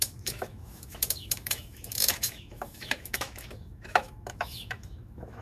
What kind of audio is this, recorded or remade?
remade